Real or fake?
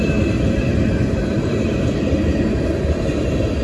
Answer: real